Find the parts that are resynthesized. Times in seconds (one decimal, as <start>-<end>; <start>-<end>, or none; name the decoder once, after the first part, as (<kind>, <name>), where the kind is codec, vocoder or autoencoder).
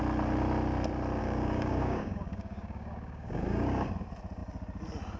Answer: 1.2-3.9 (codec, DAC)